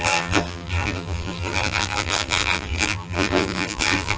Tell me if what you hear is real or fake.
fake